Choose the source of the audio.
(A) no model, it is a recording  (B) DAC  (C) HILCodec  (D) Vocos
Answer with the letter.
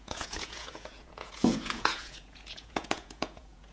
D